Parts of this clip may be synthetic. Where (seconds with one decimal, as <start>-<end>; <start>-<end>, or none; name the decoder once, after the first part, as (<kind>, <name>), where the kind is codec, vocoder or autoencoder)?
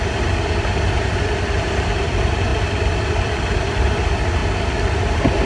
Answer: 0.0-4.4 (vocoder, BigVGAN v2); 5.0-5.5